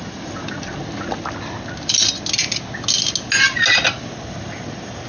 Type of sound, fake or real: real